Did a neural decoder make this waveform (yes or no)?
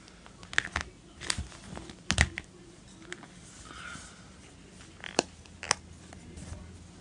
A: no